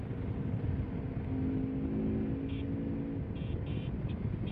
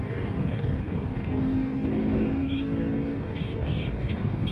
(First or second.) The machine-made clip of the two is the second